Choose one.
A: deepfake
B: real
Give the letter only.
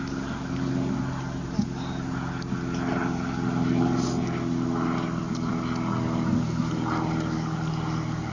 B